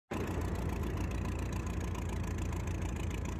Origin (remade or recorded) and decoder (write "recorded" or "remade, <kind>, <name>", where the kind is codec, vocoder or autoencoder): recorded